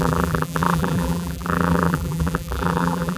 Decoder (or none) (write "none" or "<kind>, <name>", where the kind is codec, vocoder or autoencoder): vocoder, BigVGAN v2